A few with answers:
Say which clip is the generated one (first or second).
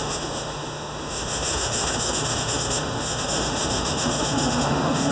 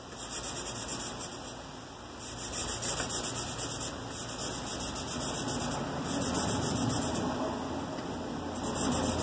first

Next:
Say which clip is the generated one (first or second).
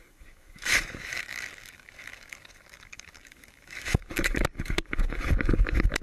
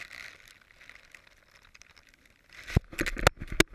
first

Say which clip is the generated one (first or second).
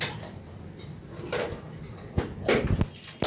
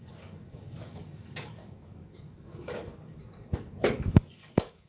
second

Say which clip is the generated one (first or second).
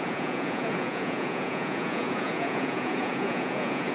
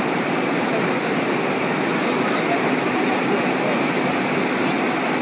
first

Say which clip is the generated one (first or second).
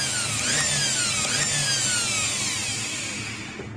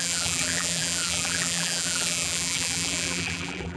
second